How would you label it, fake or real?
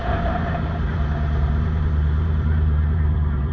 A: fake